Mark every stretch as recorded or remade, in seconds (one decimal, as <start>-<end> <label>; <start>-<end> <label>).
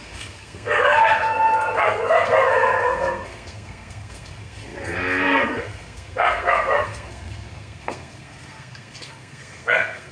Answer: 0.0-10.1 remade